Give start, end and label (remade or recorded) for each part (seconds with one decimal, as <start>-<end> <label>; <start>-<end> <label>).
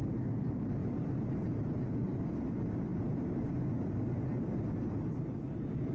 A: 0.0-0.8 recorded; 0.8-2.4 remade; 2.4-5.9 recorded